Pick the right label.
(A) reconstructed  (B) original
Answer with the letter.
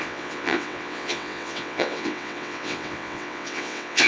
A